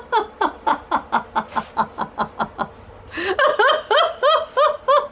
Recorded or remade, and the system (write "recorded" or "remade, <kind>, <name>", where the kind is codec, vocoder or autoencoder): recorded